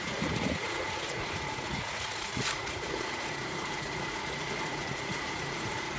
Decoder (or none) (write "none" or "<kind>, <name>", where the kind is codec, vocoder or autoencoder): vocoder, Vocos